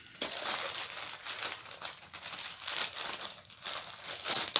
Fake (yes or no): no